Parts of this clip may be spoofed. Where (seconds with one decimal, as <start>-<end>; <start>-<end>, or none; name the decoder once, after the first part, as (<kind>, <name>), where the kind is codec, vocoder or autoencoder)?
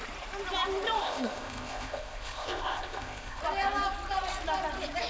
1.0-3.4 (codec, ZipCodec)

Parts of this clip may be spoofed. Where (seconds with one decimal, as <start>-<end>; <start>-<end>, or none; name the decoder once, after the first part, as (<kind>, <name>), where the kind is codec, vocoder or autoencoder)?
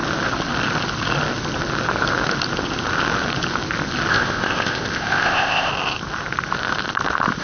4.1-5.7 (codec, ZipCodec)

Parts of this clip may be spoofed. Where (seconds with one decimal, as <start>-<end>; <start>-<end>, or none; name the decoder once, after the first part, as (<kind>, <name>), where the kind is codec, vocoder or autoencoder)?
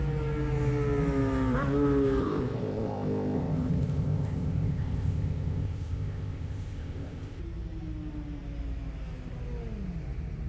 2.2-7.4 (codec, ZipCodec)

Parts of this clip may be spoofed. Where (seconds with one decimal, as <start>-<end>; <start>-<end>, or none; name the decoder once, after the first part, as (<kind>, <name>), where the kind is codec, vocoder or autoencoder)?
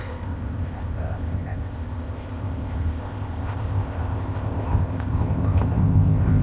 0.0-6.4 (codec, ZipCodec)